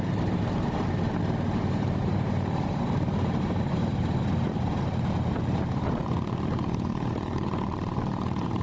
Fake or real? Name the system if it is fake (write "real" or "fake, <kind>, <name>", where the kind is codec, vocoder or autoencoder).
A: fake, vocoder, BigVGAN v2